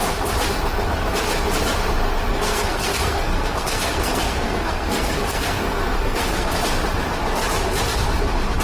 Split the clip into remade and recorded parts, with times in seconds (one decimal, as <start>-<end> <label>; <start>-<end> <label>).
0.0-2.3 recorded; 2.3-6.6 remade; 6.6-8.6 recorded